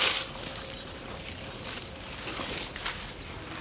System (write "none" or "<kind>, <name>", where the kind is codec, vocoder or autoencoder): none